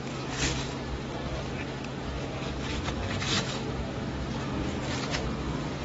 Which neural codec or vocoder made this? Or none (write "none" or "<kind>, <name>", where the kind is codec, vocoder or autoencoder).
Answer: none